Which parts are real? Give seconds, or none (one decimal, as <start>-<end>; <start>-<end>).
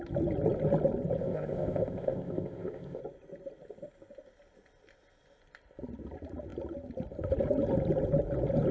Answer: 0.0-1.2; 3.0-8.7